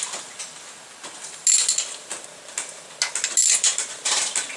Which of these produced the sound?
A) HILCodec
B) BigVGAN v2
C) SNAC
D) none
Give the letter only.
D